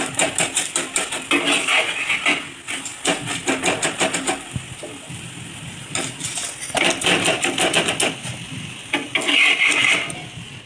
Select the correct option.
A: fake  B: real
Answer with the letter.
B